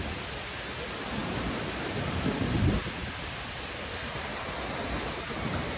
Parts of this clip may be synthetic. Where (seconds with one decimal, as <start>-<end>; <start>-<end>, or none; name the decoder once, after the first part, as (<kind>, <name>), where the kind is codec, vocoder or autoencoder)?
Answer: 3.0-3.9 (vocoder, BigVGAN v2)